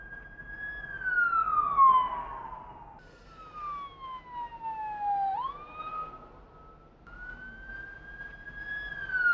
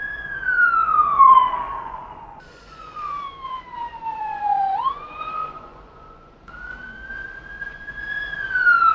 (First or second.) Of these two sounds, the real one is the first